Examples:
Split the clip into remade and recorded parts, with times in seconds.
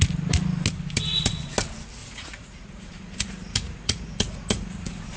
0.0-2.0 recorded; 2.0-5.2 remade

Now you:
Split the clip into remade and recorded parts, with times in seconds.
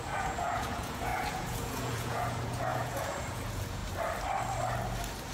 0.0-3.8 remade; 3.8-5.3 recorded